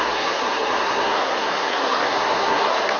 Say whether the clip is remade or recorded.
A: remade